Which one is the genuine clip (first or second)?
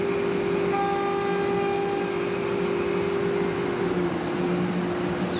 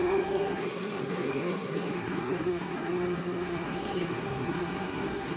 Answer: first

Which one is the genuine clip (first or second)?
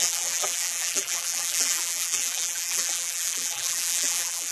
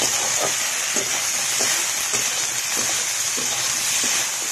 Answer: second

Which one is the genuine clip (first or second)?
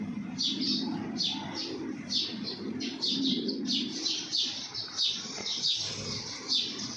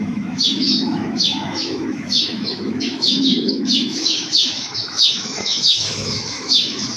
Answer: first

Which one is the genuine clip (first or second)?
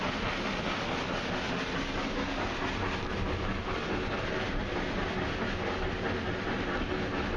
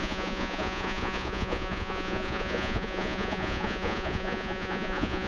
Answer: first